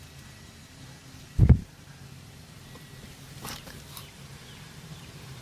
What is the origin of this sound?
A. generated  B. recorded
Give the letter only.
A